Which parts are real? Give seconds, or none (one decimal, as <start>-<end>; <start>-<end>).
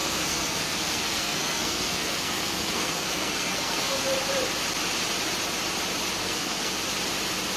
4.0-6.2; 6.7-7.6